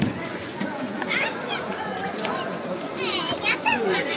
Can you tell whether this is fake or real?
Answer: fake